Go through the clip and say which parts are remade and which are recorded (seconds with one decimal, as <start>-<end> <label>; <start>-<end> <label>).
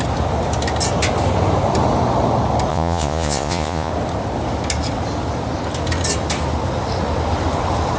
0.0-2.7 recorded; 2.7-3.9 remade; 3.9-8.0 recorded